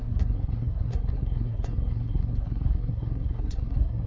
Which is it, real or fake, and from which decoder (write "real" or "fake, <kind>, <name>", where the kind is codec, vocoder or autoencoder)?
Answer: fake, codec, SNAC